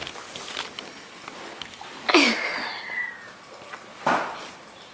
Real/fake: real